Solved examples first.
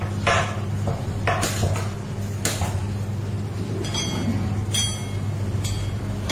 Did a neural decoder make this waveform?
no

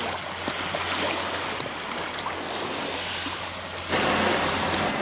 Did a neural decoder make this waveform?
no